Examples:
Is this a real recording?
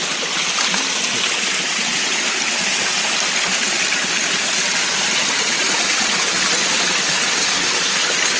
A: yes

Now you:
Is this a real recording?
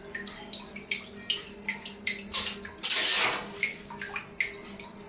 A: yes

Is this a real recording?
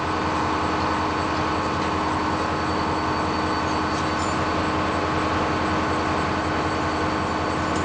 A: yes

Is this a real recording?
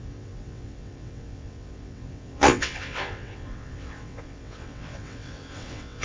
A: no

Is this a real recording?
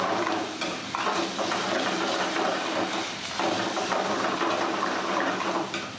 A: yes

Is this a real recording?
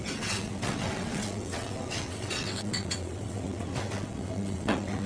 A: no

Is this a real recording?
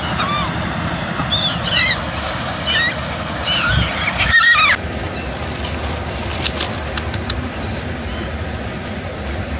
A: yes